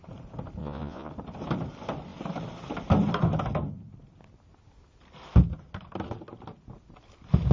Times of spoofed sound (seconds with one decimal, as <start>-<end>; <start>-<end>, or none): 0.6-1.1